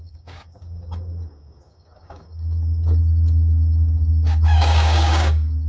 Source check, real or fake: fake